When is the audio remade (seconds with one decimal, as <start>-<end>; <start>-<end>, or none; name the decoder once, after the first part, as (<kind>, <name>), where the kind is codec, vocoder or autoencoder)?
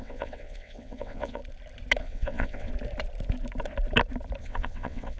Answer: 0.0-1.4 (vocoder, WaveNeXt); 2.0-2.7; 4.4-5.2